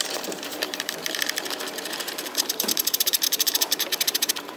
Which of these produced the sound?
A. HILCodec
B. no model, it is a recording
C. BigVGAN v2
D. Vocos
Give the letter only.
C